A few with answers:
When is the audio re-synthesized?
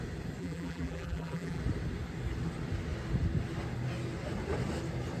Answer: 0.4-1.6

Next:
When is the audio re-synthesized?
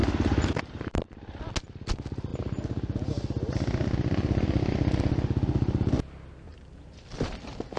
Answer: 0.0-1.5; 6.5-7.8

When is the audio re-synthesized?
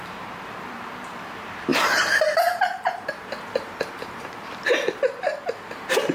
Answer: 0.0-5.3